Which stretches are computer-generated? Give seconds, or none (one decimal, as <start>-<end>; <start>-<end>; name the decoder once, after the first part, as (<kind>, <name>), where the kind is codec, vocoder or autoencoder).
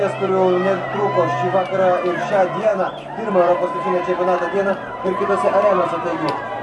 2.7-3.3 (vocoder, BigVGAN v2); 4.6-6.6